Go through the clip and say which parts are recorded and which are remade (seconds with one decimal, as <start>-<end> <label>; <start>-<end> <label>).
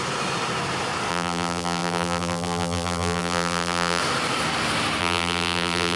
0.0-1.1 recorded; 1.1-4.0 remade; 4.0-5.0 recorded; 5.0-6.0 remade